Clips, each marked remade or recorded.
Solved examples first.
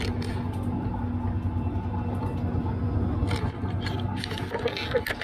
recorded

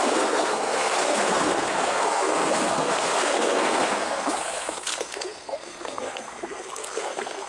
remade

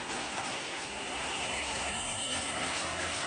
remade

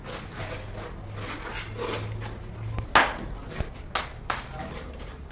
recorded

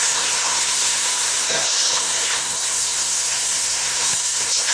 remade